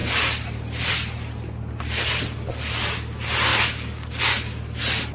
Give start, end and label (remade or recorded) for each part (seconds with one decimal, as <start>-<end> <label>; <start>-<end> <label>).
0.0-3.5 recorded; 3.5-4.2 remade; 4.2-5.1 recorded